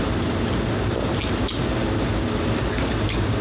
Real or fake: real